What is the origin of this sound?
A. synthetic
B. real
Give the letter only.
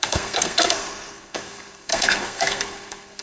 A